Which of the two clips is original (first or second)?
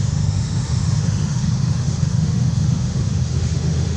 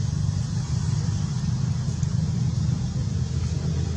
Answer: second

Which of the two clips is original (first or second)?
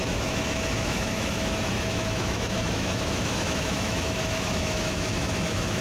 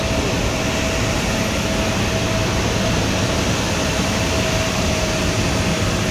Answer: second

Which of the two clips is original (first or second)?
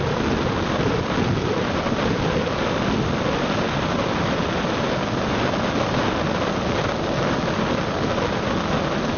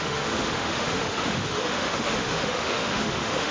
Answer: first